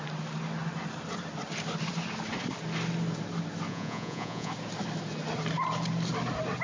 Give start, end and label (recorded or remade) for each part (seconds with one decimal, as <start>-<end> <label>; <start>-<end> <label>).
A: 0.0-3.7 recorded; 3.7-4.5 remade; 4.5-6.6 recorded